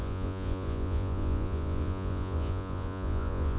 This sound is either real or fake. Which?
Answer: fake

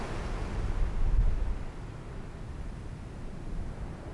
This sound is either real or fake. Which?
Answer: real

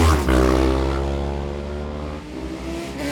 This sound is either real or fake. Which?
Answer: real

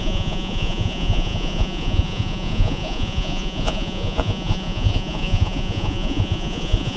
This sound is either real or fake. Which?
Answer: fake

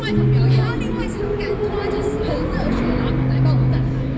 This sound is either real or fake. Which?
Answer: real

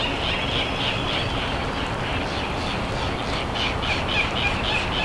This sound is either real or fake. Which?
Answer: real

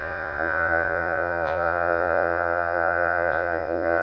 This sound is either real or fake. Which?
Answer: fake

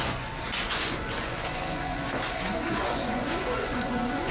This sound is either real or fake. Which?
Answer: fake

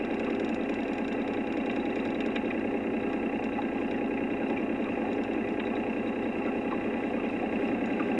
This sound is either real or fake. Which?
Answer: real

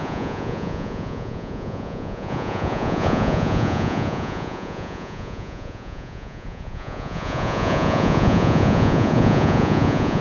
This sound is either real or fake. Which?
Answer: fake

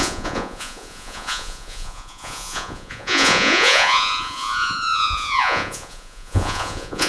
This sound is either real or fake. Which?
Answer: fake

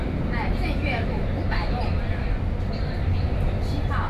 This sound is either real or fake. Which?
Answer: real